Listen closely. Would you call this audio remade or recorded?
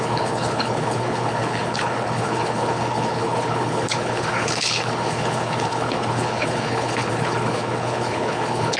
remade